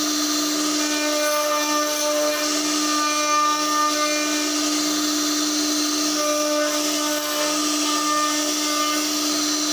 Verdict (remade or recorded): recorded